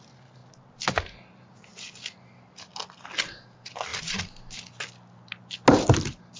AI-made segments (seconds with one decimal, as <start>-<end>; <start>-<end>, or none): none